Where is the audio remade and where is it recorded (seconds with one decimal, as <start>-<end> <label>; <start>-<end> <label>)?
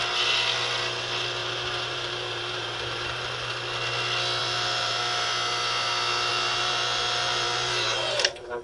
0.0-1.4 recorded; 1.4-3.5 remade; 3.5-4.4 recorded; 4.4-5.0 remade; 5.0-6.3 recorded; 6.3-8.6 remade